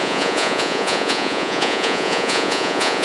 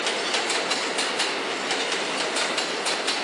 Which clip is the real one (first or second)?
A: second